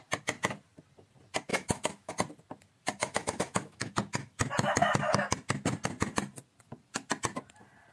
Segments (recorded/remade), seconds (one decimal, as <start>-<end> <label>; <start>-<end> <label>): 0.0-1.5 recorded; 1.5-2.1 remade; 2.1-3.0 recorded; 3.0-3.9 remade; 3.9-7.9 recorded